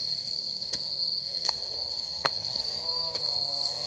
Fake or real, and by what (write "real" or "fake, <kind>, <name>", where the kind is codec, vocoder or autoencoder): fake, codec, SNAC